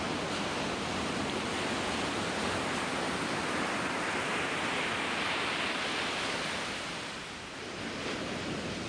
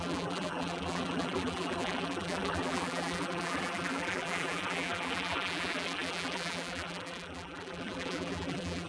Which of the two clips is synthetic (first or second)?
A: second